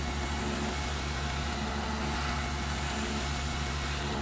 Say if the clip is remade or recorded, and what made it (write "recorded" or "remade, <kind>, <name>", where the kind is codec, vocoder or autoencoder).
recorded